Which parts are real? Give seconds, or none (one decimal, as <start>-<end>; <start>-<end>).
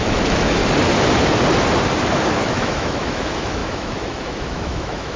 0.6-2.3